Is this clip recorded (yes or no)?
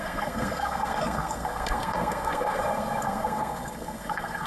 no